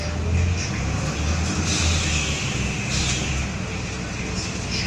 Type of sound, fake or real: real